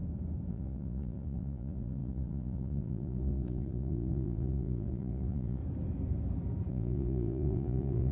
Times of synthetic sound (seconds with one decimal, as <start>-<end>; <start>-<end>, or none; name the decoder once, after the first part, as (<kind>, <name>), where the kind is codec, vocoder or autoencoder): 0.5-5.6 (vocoder, Vocos); 6.7-8.1

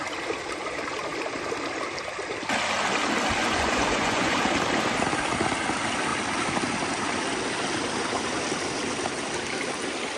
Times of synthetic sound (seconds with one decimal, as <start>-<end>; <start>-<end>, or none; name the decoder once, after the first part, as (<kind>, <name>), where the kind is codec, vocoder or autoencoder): 3.4-4.4 (vocoder, Vocos)